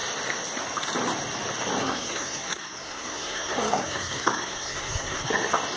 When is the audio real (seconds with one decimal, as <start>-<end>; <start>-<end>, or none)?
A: 0.0-1.8; 5.3-5.8